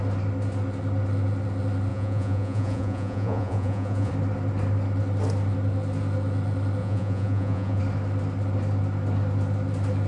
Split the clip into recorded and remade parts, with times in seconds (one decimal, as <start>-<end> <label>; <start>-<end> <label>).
0.0-1.9 recorded; 1.9-4.1 remade; 4.1-6.8 recorded; 6.8-7.8 remade; 7.8-10.1 recorded